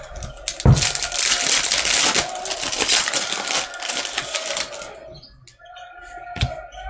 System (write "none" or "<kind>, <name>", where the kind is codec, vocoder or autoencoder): none